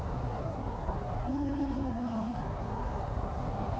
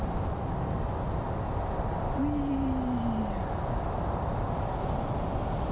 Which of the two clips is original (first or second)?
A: second